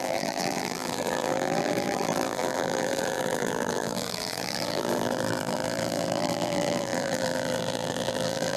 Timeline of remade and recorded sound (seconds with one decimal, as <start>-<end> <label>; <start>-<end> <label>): 0.0-8.6 remade